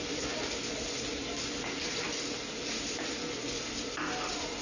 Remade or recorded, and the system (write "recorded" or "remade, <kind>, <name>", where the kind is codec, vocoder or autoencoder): recorded